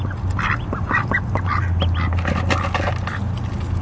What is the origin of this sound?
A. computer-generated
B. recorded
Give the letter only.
B